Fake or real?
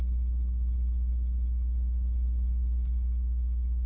fake